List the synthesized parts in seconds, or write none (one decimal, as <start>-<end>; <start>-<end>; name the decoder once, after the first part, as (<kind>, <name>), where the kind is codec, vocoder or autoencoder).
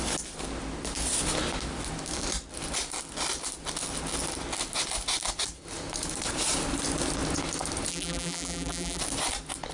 7.9-9.0 (vocoder, BigVGAN v2)